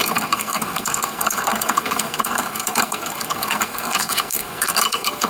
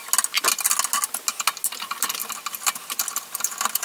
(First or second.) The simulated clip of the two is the first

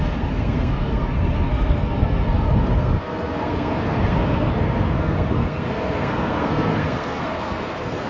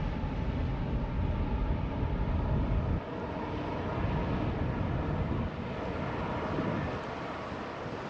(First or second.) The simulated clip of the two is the first